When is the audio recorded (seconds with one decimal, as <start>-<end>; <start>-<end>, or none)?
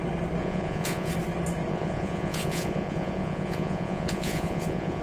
0.0-0.4; 1.1-1.7